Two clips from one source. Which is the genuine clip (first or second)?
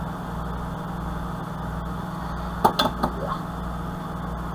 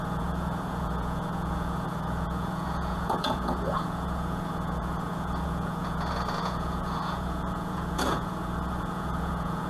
first